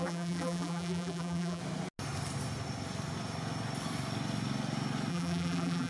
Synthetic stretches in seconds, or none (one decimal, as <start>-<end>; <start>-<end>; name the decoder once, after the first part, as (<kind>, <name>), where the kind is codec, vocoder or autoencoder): 0.0-1.6 (vocoder, BigVGAN v2); 5.1-5.9